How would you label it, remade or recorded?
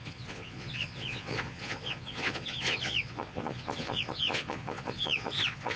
remade